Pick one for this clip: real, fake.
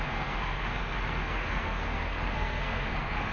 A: fake